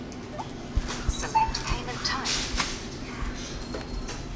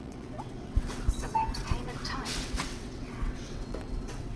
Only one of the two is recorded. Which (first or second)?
first